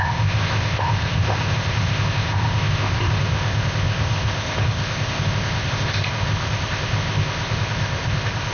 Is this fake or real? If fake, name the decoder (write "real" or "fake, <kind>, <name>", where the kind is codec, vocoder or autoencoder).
fake, codec, ZipCodec